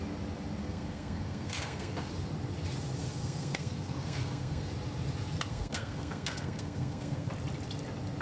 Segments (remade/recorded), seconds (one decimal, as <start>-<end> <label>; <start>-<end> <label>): 0.0-0.6 recorded; 0.6-2.1 remade; 2.1-3.0 recorded; 3.0-4.7 remade; 4.7-5.5 recorded; 5.5-7.3 remade; 7.3-8.2 recorded